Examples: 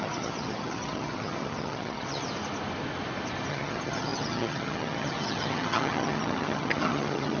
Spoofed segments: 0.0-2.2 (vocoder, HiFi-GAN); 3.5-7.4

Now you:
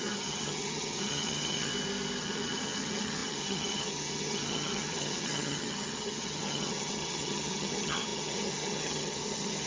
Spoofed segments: 0.0-1.7 (vocoder, HiFi-GAN); 2.2-9.7

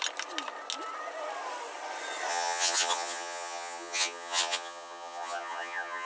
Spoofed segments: 2.3-6.1 (vocoder, HiFi-GAN)

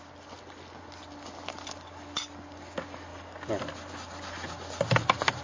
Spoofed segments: none

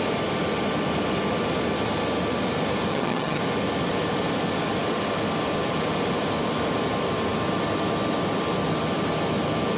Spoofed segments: 2.9-3.4 (vocoder, HiFi-GAN)

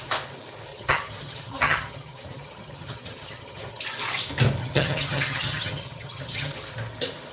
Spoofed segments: 0.7-3.8 (vocoder, HiFi-GAN); 4.6-6.5

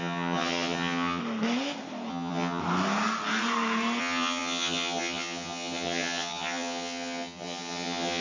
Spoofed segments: 0.0-1.2 (vocoder, HiFi-GAN); 2.1-2.6; 4.0-8.2

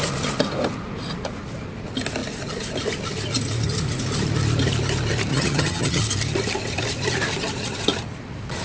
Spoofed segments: 5.3-6.0 (vocoder, HiFi-GAN)